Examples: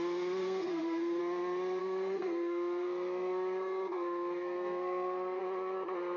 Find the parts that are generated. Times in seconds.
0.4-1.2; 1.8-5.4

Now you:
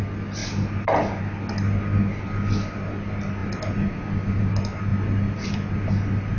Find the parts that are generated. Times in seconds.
none

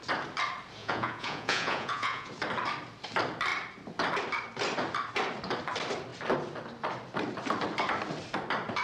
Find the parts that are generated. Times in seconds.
0.8-2.3

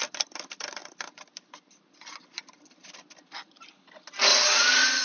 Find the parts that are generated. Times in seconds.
4.3-5.0

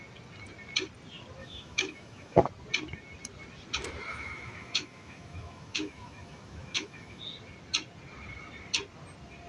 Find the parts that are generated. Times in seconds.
1.4-2.4; 4.1-7.2